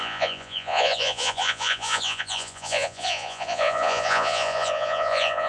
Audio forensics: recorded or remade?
remade